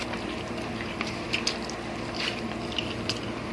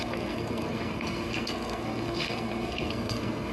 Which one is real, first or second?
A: first